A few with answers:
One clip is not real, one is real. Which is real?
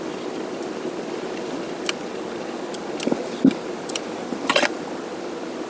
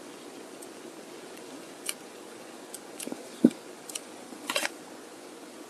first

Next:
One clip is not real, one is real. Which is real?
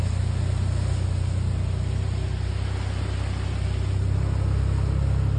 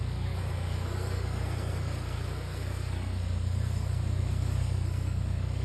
first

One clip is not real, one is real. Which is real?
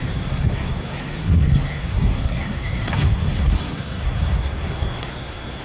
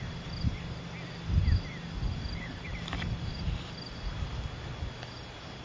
second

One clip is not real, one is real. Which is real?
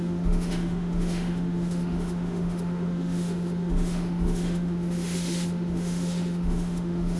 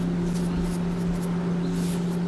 second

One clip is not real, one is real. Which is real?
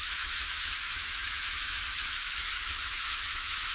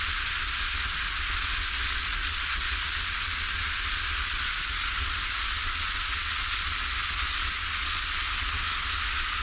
second